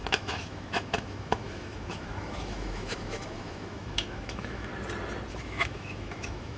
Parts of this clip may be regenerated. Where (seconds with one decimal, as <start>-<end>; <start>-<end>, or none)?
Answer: 0.0-4.7; 5.3-6.6